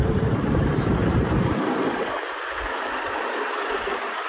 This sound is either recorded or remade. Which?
remade